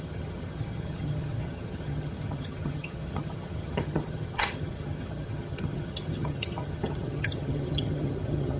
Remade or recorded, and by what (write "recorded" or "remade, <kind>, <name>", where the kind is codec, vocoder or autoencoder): remade, vocoder, HiFi-GAN